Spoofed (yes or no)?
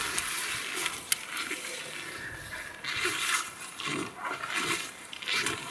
no